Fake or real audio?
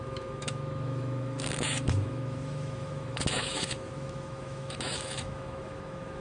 fake